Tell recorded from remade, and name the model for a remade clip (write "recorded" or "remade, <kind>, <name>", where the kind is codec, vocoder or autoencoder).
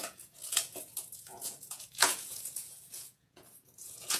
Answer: remade, vocoder, Vocos